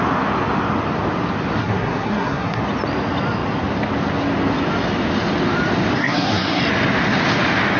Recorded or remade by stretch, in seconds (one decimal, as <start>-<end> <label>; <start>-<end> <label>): 0.0-1.6 recorded; 1.6-2.6 remade; 2.6-6.0 recorded; 6.0-6.6 remade; 6.6-7.8 recorded